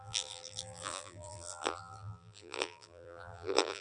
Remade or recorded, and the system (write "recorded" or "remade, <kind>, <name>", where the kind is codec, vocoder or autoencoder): remade, vocoder, BigVGAN v2